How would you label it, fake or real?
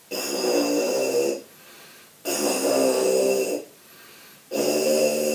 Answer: real